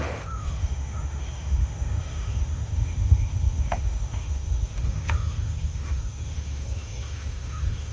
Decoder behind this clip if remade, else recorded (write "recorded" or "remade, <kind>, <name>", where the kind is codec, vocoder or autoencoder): remade, autoencoder, DAC-VAE